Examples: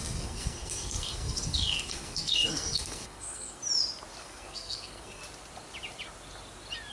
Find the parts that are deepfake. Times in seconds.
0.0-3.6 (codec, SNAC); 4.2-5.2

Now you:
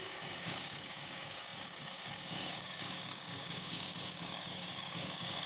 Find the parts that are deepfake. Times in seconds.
0.0-5.5 (codec, DAC)